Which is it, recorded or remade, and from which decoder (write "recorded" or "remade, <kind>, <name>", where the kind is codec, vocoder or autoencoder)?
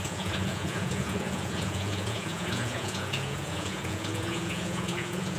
remade, vocoder, Vocos